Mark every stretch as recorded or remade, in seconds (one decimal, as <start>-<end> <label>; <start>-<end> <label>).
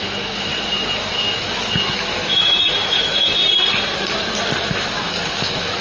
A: 0.0-3.4 remade; 3.4-4.7 recorded; 4.7-5.8 remade